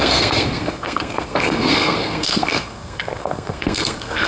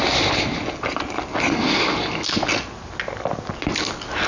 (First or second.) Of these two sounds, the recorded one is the second